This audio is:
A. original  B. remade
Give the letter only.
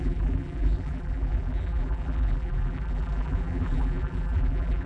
B